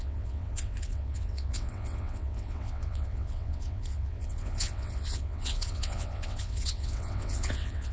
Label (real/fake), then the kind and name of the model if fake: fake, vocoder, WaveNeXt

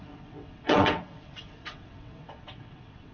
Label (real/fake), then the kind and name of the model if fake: fake, vocoder, WaveNeXt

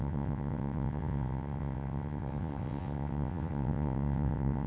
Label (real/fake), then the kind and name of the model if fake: fake, vocoder, WaveNeXt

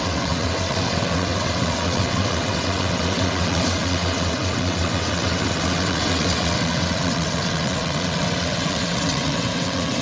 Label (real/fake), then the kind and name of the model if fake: fake, vocoder, WaveNeXt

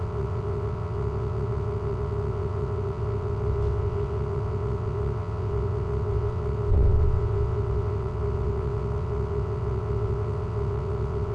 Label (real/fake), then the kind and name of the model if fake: fake, vocoder, WaveNeXt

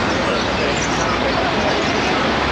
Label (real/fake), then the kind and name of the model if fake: real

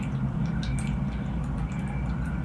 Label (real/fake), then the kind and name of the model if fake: real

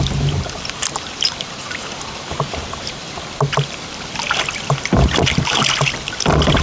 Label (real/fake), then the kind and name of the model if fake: real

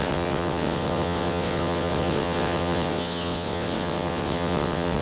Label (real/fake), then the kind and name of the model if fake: fake, vocoder, WaveNeXt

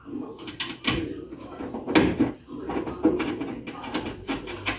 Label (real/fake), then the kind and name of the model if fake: real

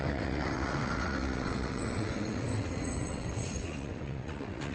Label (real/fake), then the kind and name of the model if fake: fake, vocoder, WaveNeXt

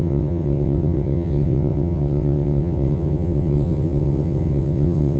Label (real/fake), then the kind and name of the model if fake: fake, vocoder, WaveNeXt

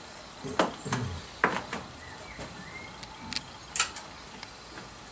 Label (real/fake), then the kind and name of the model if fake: real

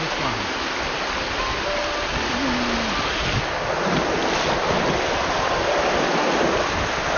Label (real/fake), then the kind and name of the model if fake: real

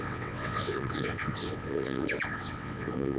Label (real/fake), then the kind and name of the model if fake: fake, vocoder, WaveNeXt